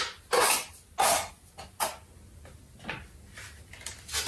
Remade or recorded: recorded